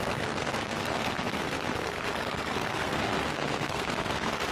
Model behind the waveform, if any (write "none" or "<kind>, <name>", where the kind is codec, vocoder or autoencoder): codec, SNAC